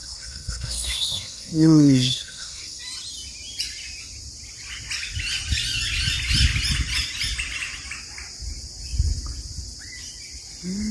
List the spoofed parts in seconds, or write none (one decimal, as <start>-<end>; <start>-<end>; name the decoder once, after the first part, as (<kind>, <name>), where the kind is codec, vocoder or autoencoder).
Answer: 0.0-2.8 (codec, SNAC)